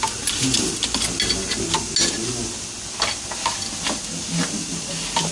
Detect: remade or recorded recorded